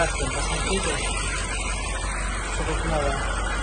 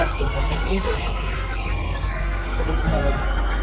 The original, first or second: first